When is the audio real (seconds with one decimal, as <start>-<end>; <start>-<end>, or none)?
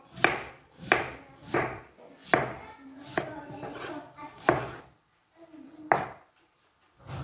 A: 0.0-7.2